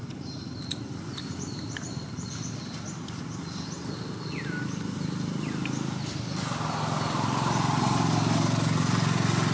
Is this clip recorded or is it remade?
recorded